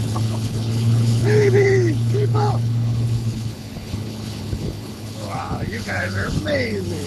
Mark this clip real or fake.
fake